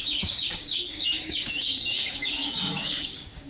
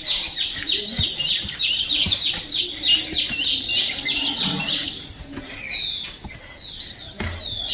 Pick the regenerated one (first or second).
first